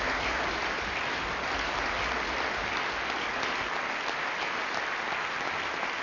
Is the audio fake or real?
real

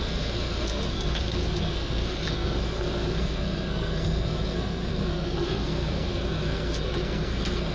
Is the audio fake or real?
fake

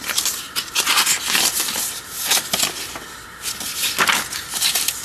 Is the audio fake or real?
real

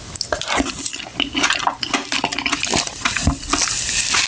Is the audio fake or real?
real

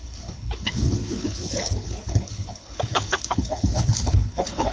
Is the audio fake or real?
fake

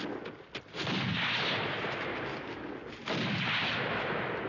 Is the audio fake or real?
real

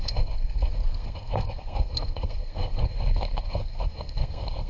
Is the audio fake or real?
fake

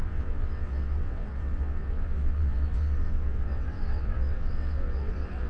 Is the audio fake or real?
fake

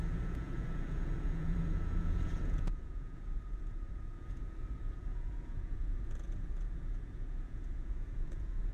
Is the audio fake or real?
fake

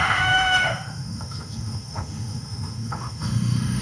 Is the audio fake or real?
fake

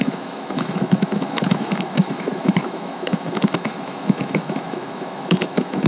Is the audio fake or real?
fake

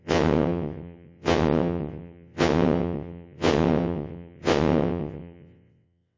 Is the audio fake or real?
fake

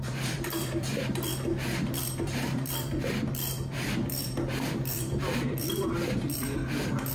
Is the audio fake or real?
fake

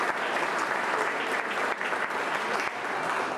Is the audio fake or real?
real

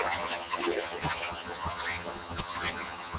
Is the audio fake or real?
fake